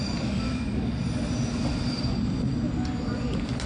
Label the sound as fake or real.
real